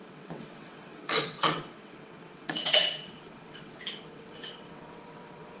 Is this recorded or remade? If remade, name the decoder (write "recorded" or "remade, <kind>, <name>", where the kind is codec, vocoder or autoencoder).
remade, vocoder, WaveNeXt